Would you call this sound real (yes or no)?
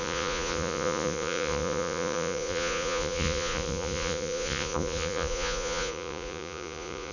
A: no